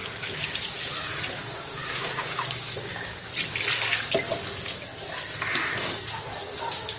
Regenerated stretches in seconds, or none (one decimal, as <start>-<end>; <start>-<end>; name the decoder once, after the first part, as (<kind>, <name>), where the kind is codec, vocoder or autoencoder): 0.0-0.5 (codec, DAC); 1.4-3.2